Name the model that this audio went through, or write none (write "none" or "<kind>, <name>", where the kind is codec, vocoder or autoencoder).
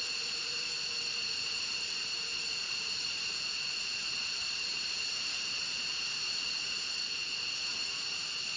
vocoder, Vocos